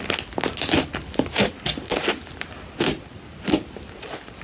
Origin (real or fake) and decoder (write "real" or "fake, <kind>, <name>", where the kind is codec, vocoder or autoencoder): real